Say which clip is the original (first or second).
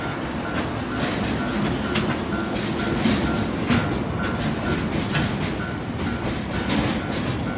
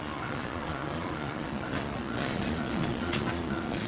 first